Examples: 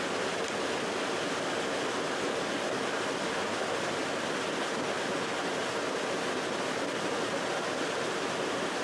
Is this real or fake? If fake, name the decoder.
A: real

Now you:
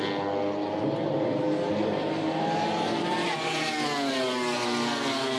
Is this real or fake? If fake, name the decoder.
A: real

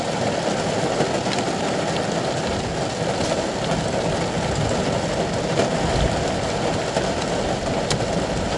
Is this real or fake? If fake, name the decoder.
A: real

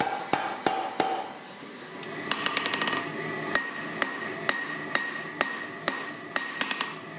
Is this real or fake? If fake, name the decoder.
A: real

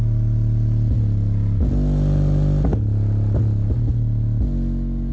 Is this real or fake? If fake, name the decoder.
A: real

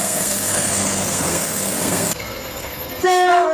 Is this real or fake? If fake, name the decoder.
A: fake, codec, SNAC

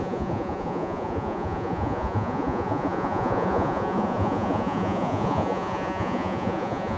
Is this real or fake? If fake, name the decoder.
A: fake, vocoder, Vocos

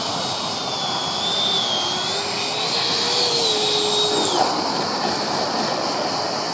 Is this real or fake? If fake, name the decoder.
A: real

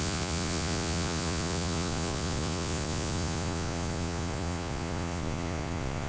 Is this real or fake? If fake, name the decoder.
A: fake, vocoder, Vocos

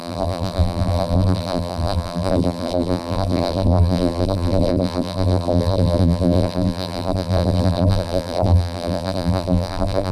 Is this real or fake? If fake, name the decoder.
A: fake, vocoder, BigVGAN v2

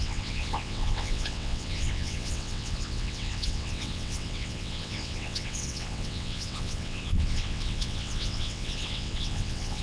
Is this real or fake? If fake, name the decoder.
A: fake, vocoder, WaveNeXt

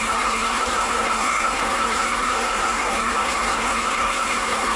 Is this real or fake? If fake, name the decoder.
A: fake, codec, SNAC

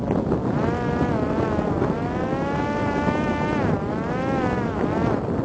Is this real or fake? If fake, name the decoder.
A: real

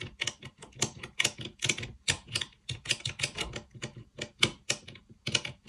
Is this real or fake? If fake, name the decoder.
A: real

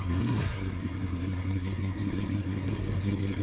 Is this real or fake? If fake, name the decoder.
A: fake, codec, SNAC